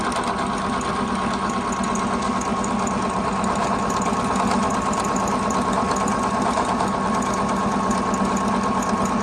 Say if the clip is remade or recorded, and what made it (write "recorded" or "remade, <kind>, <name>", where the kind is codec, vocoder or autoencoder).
recorded